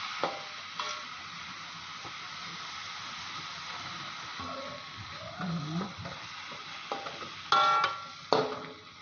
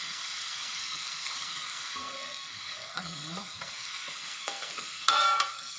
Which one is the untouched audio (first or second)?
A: first